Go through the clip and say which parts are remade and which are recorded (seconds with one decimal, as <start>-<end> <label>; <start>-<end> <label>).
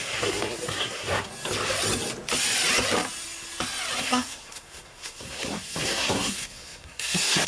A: 0.0-1.3 remade; 1.3-4.0 recorded; 4.0-7.5 remade